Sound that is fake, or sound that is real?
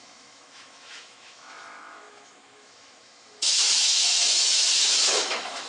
fake